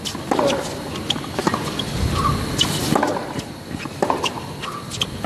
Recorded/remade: recorded